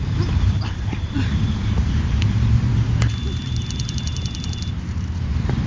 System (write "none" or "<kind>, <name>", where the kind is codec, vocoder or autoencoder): vocoder, BigVGAN v2